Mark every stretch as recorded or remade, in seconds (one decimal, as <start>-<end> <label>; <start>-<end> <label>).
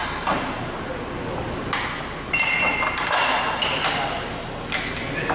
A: 0.0-5.3 recorded